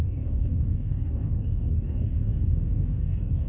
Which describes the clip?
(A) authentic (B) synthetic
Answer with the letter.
B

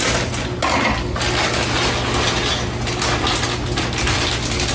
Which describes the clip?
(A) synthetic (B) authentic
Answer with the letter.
B